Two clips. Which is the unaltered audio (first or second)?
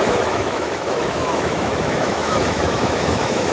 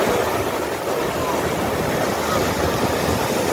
second